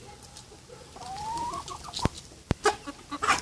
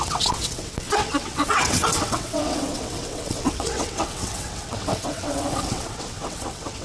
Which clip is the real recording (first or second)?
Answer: first